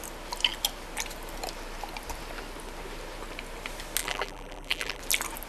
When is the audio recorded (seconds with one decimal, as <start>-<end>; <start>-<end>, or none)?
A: 0.0-4.0; 5.0-5.5